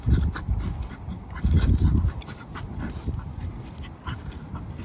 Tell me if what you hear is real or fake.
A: real